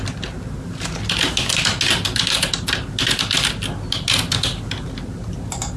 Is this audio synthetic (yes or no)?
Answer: no